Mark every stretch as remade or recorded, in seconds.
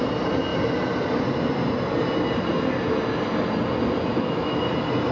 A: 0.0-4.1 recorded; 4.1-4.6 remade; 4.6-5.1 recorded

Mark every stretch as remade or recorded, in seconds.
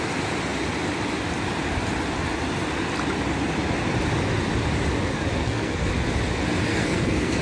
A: 0.0-5.4 recorded; 5.4-5.9 remade; 5.9-6.7 recorded; 6.7-7.4 remade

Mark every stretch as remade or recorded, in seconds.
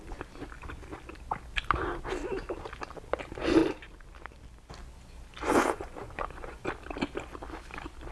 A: 0.0-5.5 recorded; 5.5-6.6 remade; 6.6-8.1 recorded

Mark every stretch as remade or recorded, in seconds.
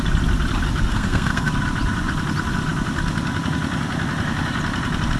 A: 0.0-0.9 recorded; 0.9-1.5 remade; 1.5-5.2 recorded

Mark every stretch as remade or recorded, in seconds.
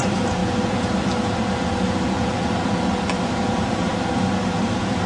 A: 0.0-0.4 remade; 0.4-3.5 recorded; 3.5-3.9 remade; 3.9-4.6 recorded; 4.6-5.1 remade